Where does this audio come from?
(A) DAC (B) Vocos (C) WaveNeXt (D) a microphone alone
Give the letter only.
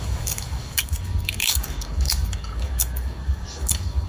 A